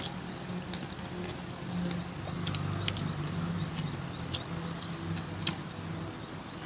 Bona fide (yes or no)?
yes